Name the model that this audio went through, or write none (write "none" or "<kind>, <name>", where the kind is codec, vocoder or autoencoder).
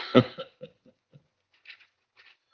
vocoder, Vocos